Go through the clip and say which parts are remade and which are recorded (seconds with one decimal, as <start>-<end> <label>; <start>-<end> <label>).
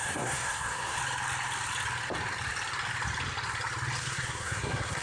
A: 0.0-1.0 remade; 1.0-4.0 recorded; 4.0-5.0 remade